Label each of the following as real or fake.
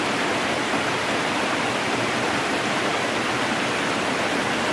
real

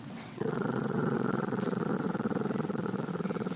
fake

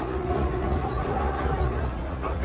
fake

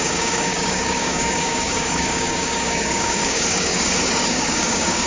fake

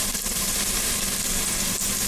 real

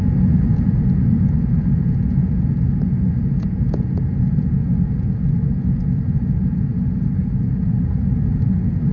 fake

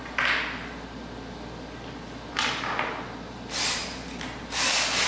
real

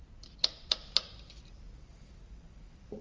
real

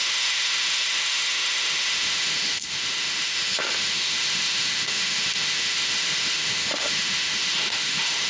fake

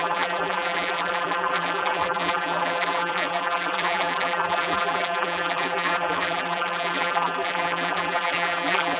fake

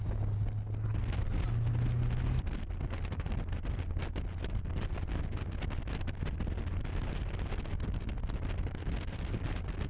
real